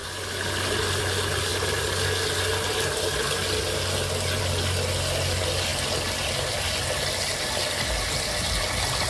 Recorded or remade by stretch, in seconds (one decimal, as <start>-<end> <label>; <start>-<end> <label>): 0.0-9.1 recorded